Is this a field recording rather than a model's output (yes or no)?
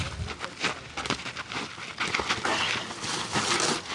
yes